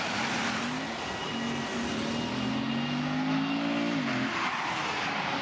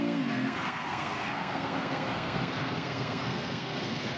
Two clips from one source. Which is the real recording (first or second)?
first